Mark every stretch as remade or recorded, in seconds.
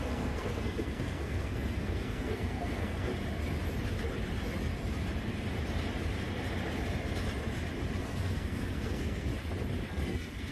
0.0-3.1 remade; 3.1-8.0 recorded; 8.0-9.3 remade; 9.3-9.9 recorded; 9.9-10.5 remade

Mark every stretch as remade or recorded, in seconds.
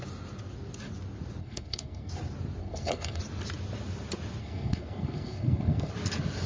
0.0-1.4 recorded; 1.4-2.1 remade; 2.1-2.6 recorded; 2.6-3.2 remade; 3.2-4.4 recorded; 4.4-5.9 remade; 5.9-6.5 recorded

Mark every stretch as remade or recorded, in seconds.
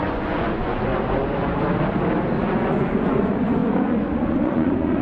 0.0-0.9 remade; 0.9-2.4 recorded; 2.4-5.0 remade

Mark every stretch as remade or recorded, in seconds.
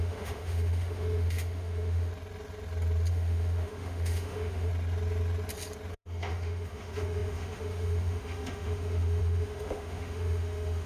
0.0-2.1 remade; 2.1-3.1 recorded; 3.1-4.7 remade; 4.7-5.9 recorded; 5.9-10.9 remade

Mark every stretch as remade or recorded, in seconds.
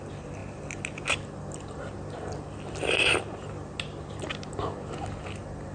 0.0-5.7 recorded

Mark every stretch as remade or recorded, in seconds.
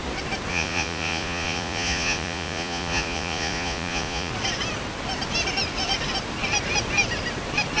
0.0-0.5 recorded; 0.5-4.3 remade; 4.3-7.8 recorded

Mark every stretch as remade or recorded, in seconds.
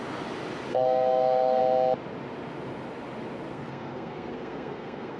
0.0-0.7 recorded; 0.7-1.6 remade; 1.6-3.5 recorded; 3.5-5.2 remade